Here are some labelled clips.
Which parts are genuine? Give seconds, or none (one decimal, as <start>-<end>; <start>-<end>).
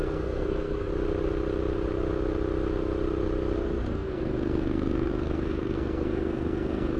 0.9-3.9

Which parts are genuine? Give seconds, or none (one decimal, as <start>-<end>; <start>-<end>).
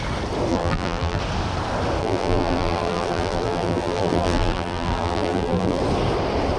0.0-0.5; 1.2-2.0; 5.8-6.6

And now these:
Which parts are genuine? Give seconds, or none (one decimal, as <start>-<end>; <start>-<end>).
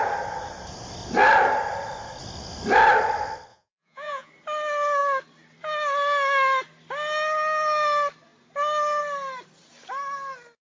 0.0-3.5; 4.3-10.7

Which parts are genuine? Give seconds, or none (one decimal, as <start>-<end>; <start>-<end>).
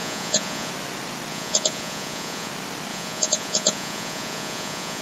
0.7-1.3; 2.5-2.9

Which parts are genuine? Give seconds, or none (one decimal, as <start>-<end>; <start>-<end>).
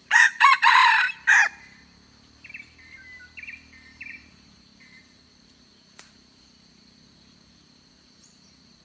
0.8-4.1